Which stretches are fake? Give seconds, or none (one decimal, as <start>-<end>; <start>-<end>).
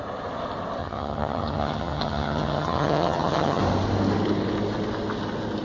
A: 0.8-3.6